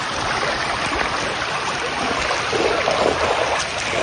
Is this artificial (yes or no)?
no